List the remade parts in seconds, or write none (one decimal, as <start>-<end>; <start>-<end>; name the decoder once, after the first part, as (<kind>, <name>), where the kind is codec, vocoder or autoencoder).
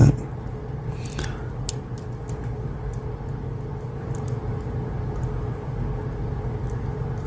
none